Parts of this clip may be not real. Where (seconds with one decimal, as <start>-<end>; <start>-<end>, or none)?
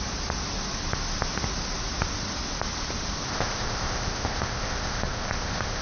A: 3.3-5.8